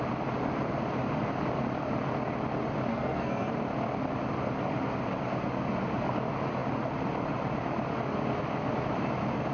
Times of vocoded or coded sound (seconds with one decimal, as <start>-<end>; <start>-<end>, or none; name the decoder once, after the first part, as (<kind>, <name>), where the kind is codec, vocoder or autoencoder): 2.9-3.5 (codec, SNAC)